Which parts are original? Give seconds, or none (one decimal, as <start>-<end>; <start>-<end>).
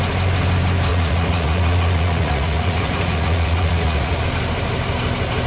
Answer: 0.0-0.9; 4.2-5.5